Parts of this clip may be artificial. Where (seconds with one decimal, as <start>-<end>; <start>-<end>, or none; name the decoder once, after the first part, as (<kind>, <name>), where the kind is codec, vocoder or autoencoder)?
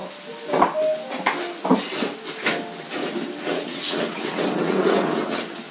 3.4-5.7 (vocoder, WaveNeXt)